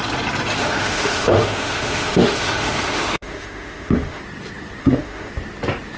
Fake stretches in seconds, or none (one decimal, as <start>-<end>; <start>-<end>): 0.6-4.2; 4.8-5.3